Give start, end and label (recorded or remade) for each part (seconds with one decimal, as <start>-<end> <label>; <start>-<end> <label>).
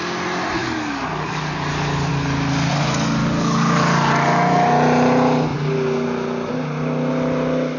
0.0-0.6 recorded; 0.6-2.1 remade; 2.1-3.2 recorded; 3.2-4.7 remade; 4.7-7.8 recorded